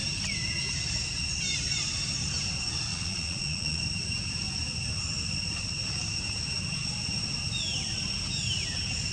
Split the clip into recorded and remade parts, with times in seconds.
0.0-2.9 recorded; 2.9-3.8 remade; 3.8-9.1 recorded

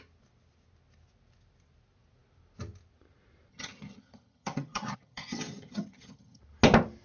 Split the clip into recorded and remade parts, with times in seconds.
0.0-3.5 recorded; 3.5-6.4 remade; 6.4-7.0 recorded

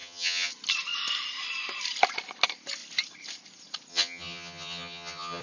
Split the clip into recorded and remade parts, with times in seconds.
0.0-0.5 remade; 0.5-3.9 recorded; 3.9-5.4 remade

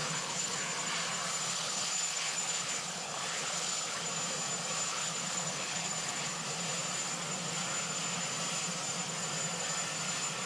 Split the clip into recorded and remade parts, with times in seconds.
0.0-0.6 remade; 0.6-1.5 recorded; 1.5-4.0 remade; 4.0-4.9 recorded; 4.9-6.3 remade; 6.3-10.5 recorded

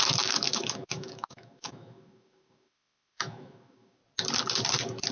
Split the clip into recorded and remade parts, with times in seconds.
0.0-4.0 remade; 4.0-5.1 recorded

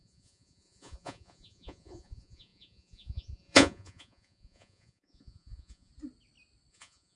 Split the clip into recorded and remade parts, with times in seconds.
0.0-5.9 remade; 5.9-6.7 recorded; 6.7-7.2 remade

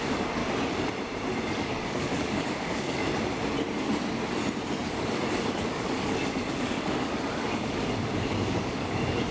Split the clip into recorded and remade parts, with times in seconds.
0.0-0.4 remade; 0.4-1.5 recorded; 1.5-3.0 remade; 3.0-4.9 recorded; 4.9-9.3 remade

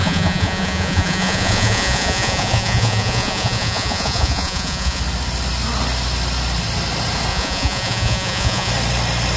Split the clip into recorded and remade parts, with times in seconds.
0.0-5.0 remade; 5.0-7.3 recorded; 7.3-8.7 remade; 8.7-9.4 recorded